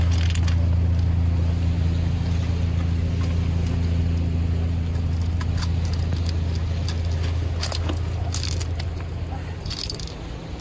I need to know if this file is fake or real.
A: real